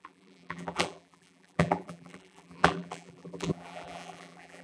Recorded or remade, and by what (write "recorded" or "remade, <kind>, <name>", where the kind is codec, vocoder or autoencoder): remade, vocoder, BigVGAN v2